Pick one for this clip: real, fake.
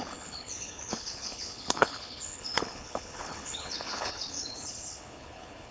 fake